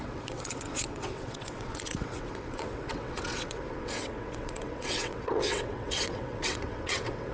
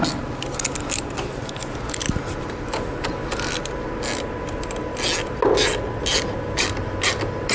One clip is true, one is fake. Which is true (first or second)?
second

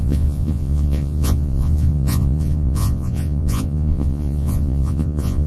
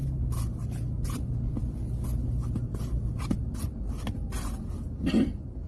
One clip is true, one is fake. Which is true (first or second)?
second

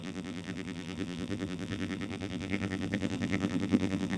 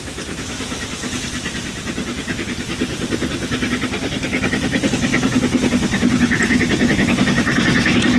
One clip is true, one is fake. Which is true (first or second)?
second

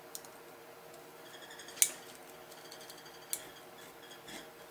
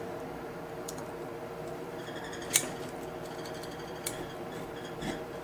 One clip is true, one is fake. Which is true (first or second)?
first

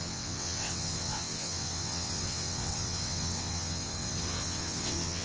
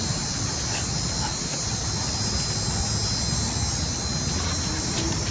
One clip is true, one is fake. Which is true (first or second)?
second